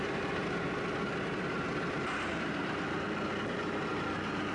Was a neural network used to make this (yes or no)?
no